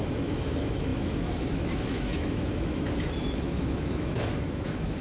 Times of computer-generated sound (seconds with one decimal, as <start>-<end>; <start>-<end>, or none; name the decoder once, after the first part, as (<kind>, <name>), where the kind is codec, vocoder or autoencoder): 0.0-5.0 (autoencoder, DAC-VAE)